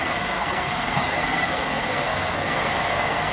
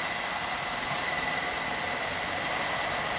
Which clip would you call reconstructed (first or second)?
first